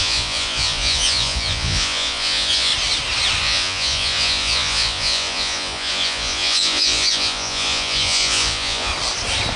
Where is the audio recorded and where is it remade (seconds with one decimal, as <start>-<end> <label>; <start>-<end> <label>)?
0.0-2.7 remade; 2.7-3.4 recorded; 3.4-8.9 remade; 8.9-9.6 recorded